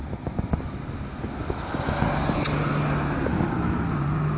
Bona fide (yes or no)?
yes